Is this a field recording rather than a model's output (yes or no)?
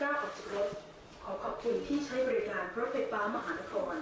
yes